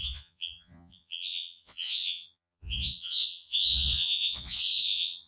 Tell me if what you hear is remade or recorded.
remade